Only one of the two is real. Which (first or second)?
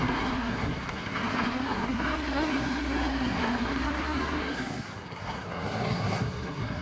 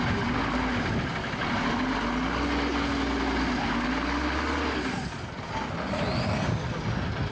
second